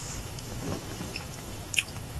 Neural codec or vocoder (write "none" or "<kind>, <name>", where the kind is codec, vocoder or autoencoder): autoencoder, DAC-VAE